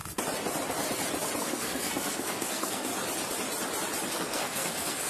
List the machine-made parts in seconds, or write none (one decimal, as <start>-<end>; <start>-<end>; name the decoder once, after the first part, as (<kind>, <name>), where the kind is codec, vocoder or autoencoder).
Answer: 1.4-2.9 (codec, SNAC); 4.1-5.1